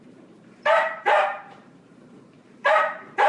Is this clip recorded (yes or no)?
no